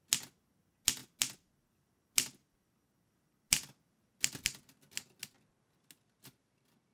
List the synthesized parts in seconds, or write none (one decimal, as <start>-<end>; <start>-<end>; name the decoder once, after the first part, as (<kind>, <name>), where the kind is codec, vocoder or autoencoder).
none